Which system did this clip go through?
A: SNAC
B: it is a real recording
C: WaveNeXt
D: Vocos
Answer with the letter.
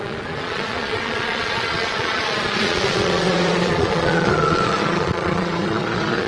D